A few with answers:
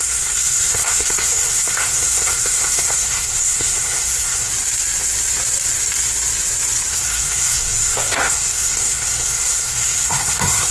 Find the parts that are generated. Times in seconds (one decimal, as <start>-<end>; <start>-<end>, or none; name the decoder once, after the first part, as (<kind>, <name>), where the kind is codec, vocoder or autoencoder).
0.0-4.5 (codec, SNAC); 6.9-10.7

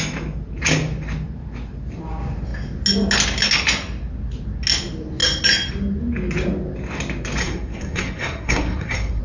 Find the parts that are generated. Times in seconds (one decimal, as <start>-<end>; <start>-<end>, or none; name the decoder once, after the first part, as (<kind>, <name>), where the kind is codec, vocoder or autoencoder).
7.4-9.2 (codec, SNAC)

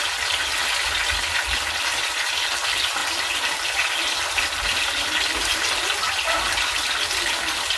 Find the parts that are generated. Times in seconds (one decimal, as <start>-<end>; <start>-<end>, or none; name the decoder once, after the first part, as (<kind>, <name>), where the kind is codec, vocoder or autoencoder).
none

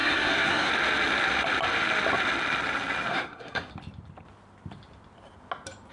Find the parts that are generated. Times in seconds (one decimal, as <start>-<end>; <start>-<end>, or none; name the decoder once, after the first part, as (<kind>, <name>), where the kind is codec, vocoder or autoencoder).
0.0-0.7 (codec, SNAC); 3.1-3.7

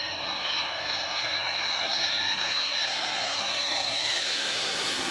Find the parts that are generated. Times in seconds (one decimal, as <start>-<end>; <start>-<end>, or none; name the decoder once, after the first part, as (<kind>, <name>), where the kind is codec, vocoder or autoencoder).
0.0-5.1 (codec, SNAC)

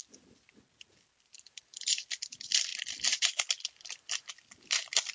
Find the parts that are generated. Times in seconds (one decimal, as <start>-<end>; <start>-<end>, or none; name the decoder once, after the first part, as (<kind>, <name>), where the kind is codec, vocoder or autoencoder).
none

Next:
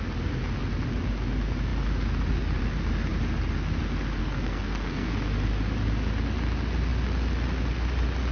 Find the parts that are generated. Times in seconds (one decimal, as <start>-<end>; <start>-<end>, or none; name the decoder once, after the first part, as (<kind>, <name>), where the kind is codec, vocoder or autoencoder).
4.2-5.1 (codec, SNAC)

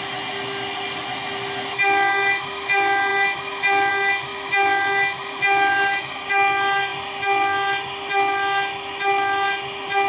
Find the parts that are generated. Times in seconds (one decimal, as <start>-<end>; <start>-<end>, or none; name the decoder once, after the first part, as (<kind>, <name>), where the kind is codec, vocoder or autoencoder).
none